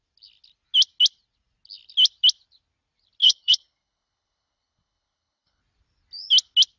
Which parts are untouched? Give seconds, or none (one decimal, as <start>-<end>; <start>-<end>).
0.0-3.2; 5.6-6.8